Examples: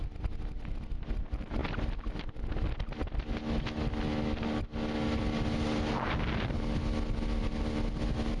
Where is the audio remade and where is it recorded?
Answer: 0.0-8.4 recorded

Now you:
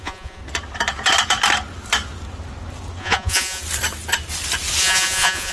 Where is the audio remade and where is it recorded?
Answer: 0.0-0.4 remade; 0.4-3.0 recorded; 3.0-3.6 remade; 3.6-4.8 recorded; 4.8-5.5 remade

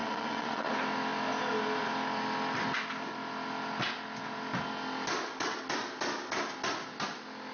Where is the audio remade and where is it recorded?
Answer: 0.0-0.7 remade; 0.7-7.5 recorded

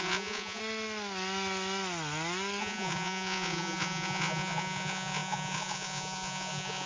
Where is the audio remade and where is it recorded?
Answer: 0.0-0.6 remade; 0.6-2.6 recorded; 2.6-6.9 remade

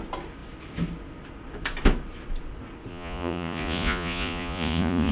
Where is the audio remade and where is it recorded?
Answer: 0.0-2.9 recorded; 2.9-5.1 remade